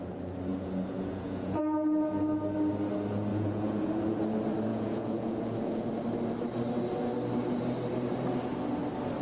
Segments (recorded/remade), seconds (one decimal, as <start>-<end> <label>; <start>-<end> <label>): 0.0-0.5 recorded; 0.5-1.6 remade; 1.6-3.3 recorded; 3.3-4.2 remade; 4.2-4.7 recorded; 4.7-5.9 remade; 5.9-9.2 recorded